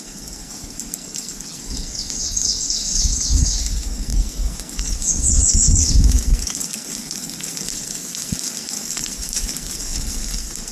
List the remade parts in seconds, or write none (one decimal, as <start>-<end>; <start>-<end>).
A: 0.0-10.7